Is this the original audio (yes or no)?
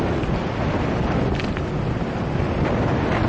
yes